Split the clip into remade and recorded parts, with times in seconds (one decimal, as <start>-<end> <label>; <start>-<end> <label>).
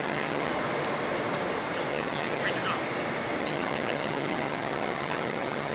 0.0-0.5 remade; 0.5-1.9 recorded; 1.9-2.4 remade; 2.4-3.4 recorded; 3.4-5.7 remade